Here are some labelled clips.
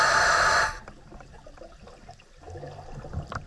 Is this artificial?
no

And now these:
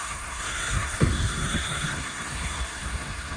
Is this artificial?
yes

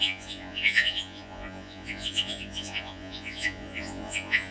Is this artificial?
yes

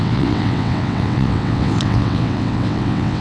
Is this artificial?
yes